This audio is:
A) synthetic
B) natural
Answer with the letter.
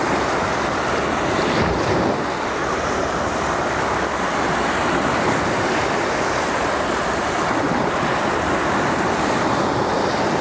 B